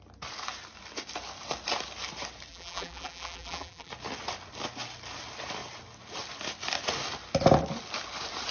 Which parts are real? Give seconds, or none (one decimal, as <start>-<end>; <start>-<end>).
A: 0.0-2.5; 3.9-8.5